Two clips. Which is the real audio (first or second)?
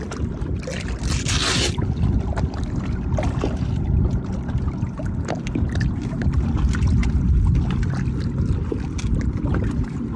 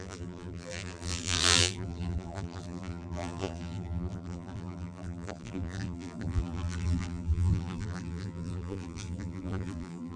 first